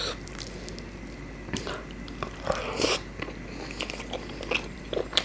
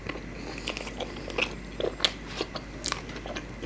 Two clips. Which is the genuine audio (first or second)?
second